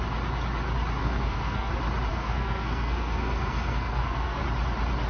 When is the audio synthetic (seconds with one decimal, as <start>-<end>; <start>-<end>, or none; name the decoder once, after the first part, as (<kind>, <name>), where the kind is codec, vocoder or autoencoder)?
1.0-1.7 (codec, SNAC); 2.1-4.4